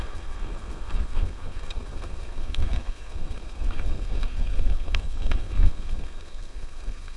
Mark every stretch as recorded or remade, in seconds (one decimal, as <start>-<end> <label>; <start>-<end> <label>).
0.0-7.2 remade